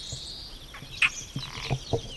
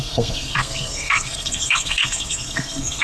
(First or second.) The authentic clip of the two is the first